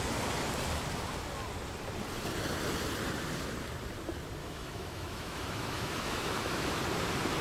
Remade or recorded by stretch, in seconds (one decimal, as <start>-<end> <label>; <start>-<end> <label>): 0.0-4.4 recorded; 4.4-6.8 remade; 6.8-7.4 recorded